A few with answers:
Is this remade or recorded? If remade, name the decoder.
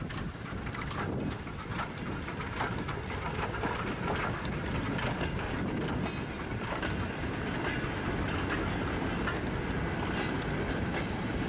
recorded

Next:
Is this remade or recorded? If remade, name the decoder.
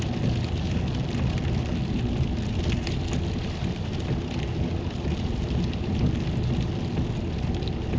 recorded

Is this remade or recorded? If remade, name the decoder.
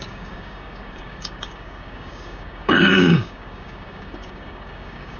remade, codec, DAC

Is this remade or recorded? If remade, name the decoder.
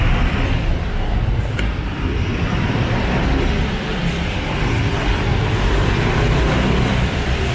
remade, vocoder, BigVGAN v2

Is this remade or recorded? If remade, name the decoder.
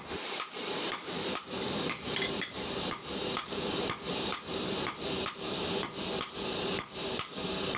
remade, vocoder, BigVGAN v2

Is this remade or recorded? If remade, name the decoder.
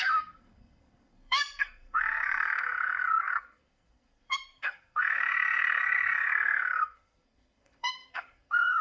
remade, codec, SNAC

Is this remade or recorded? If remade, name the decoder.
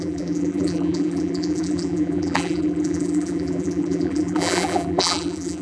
remade, vocoder, BigVGAN v2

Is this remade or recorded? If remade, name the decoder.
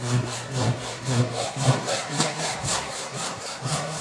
remade, codec, SNAC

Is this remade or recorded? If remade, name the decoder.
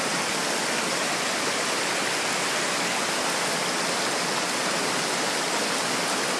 recorded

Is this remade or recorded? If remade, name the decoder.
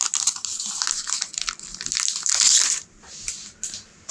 recorded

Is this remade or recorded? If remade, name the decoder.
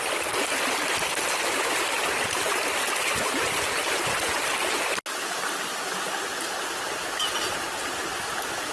recorded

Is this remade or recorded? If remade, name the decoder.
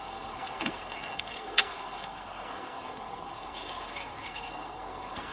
remade, codec, SNAC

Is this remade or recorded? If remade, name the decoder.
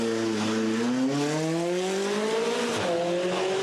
recorded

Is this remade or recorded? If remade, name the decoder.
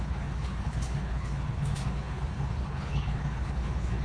remade, codec, HILCodec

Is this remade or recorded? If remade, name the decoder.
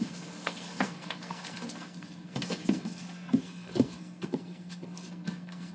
remade, codec, SNAC